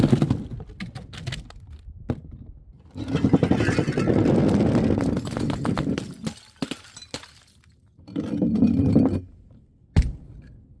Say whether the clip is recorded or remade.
recorded